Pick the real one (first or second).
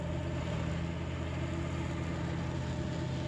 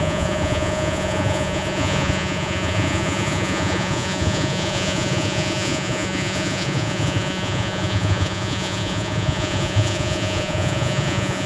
first